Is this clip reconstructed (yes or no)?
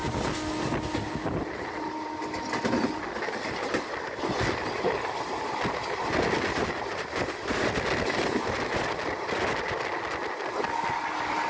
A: no